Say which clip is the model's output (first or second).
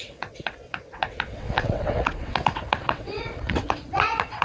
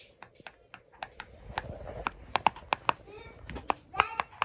first